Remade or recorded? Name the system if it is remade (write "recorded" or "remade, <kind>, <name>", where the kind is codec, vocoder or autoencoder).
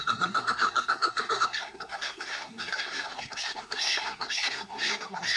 remade, codec, SNAC